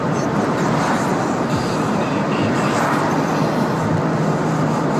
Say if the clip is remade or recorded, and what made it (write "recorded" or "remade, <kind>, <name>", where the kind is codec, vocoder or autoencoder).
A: recorded